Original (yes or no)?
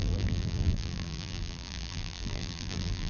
no